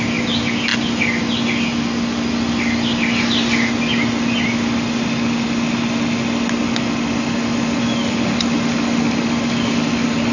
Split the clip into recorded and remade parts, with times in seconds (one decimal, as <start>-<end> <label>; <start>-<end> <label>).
0.0-10.3 recorded